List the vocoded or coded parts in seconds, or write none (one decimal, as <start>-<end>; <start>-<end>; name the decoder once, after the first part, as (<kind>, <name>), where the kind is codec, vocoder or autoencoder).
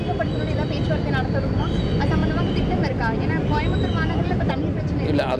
none